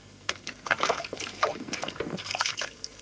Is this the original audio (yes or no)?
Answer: no